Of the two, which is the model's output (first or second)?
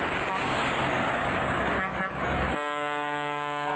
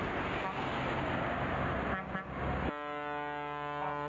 first